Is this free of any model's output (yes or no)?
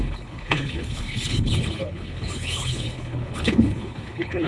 no